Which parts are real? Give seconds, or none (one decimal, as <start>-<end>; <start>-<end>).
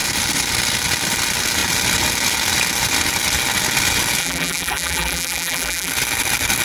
0.0-4.2; 5.9-6.6